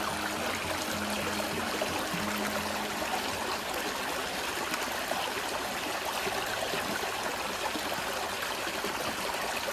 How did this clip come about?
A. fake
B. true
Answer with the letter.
B